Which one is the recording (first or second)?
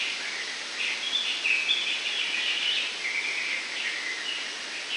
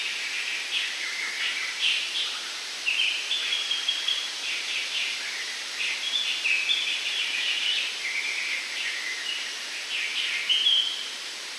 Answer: first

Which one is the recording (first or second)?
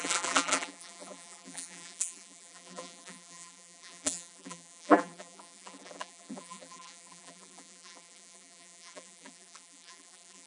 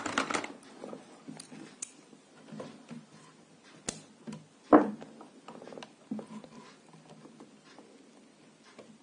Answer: second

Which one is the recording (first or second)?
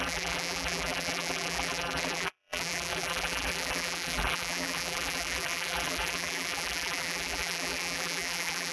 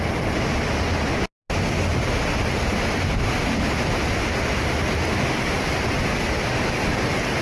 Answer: second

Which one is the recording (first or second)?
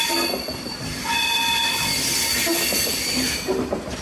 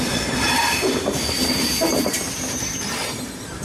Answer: first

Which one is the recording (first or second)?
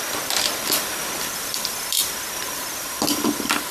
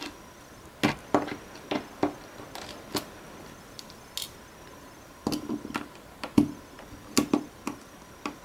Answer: second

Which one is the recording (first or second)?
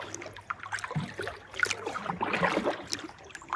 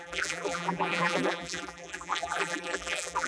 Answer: first